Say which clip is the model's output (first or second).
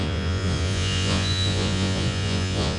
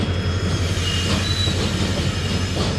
first